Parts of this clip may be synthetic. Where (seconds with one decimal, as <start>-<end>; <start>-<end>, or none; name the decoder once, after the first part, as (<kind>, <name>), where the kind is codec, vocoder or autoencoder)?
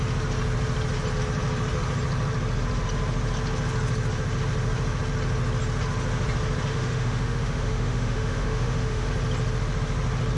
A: 6.7-9.1 (autoencoder, DAC-VAE)